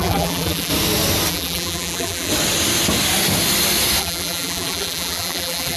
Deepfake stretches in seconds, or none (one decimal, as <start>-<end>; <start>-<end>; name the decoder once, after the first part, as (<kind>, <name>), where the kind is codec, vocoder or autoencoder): 0.0-0.7 (vocoder, BigVGAN v2); 1.3-2.3; 4.0-5.8